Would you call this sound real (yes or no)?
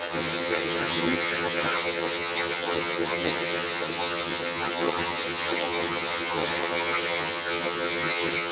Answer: no